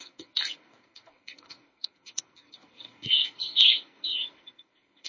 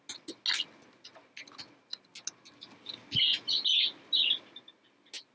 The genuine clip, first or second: second